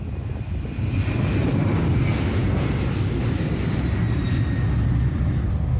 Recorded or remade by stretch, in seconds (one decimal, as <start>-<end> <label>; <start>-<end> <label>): 0.0-5.8 recorded